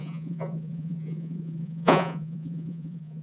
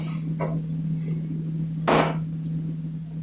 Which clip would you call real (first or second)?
second